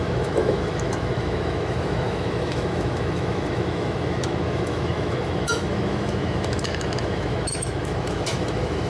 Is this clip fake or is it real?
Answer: fake